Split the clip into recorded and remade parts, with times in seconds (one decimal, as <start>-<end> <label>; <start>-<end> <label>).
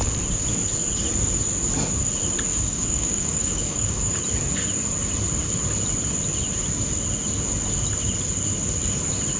0.0-2.5 recorded; 2.5-4.2 remade; 4.2-9.4 recorded